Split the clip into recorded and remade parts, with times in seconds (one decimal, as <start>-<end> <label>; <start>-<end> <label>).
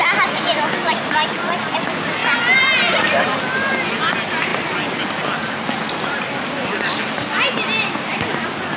0.0-8.8 recorded